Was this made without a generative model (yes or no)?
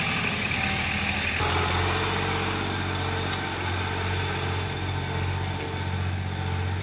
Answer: yes